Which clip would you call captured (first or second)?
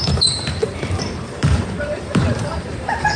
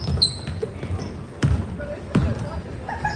second